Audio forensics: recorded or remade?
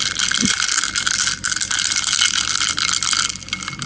recorded